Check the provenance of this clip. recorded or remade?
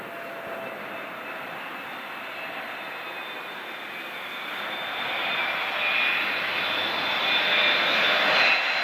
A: recorded